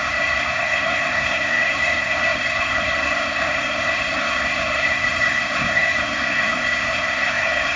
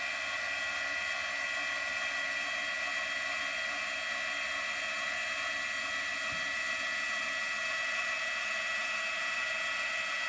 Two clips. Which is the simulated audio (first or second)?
first